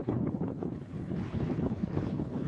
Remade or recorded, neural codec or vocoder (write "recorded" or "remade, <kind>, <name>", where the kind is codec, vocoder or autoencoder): remade, codec, HILCodec